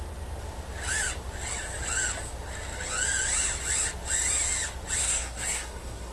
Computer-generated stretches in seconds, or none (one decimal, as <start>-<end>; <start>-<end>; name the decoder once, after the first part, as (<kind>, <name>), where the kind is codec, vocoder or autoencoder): 5.0-6.1 (codec, SNAC)